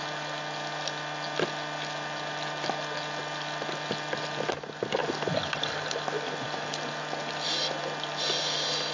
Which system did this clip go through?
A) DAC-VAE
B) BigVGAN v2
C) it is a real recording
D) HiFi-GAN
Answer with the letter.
C